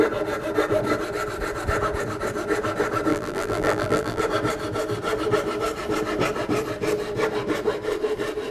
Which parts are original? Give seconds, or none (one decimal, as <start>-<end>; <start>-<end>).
0.0-3.1; 4.2-8.5